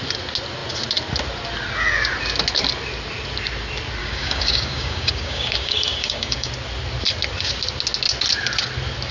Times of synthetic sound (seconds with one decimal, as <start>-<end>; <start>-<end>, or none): 4.0-6.5